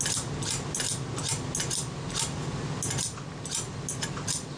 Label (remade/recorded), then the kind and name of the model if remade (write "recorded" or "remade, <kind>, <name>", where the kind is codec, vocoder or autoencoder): recorded